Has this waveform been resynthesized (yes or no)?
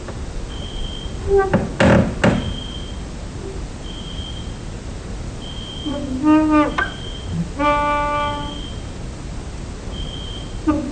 no